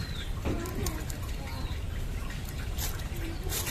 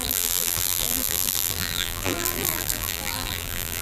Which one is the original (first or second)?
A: first